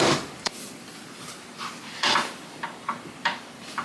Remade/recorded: remade